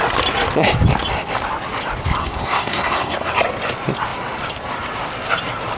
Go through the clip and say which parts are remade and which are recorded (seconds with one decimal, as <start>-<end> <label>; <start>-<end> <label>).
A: 0.0-2.2 recorded; 2.2-3.3 remade; 3.3-5.8 recorded